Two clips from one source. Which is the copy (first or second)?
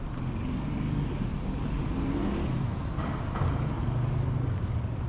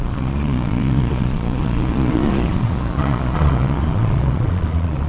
second